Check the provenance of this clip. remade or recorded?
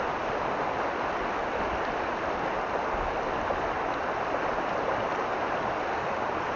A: recorded